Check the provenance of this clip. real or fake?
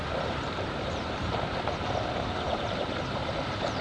fake